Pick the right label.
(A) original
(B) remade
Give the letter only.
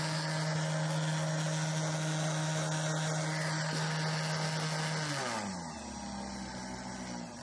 A